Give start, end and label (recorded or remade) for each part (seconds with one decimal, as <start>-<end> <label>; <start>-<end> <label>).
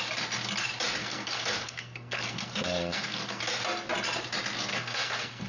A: 0.0-1.0 recorded; 1.0-3.4 remade; 3.4-4.7 recorded; 4.7-5.5 remade